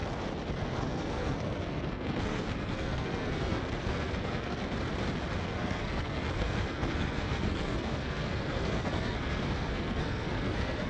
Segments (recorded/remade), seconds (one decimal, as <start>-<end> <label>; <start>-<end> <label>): 0.0-0.5 recorded; 0.5-4.6 remade; 4.6-5.4 recorded; 5.4-10.9 remade